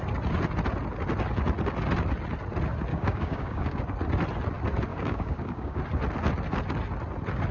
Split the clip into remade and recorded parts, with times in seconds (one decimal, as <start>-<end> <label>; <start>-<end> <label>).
0.0-2.9 recorded; 2.9-3.8 remade; 3.8-4.9 recorded; 4.9-5.8 remade; 5.8-7.5 recorded